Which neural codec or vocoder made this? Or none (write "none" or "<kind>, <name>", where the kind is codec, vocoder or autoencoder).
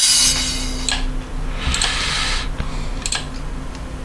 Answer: none